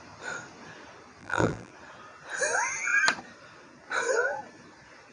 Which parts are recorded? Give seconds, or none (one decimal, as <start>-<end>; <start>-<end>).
0.0-1.2; 1.7-5.1